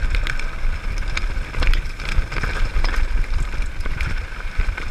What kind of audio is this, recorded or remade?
recorded